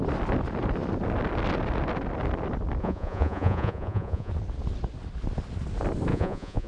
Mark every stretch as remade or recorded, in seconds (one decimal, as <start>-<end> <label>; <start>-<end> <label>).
0.0-2.8 recorded; 2.8-4.3 remade; 4.3-6.1 recorded; 6.1-6.7 remade